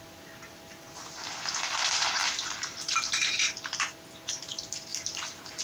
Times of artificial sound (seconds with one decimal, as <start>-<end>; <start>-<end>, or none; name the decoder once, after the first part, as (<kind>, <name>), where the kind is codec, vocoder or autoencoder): 2.2-3.5 (vocoder, BigVGAN v2); 4.9-5.6